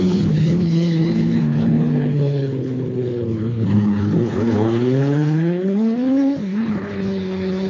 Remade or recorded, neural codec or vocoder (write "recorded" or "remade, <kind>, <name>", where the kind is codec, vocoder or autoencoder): remade, codec, HILCodec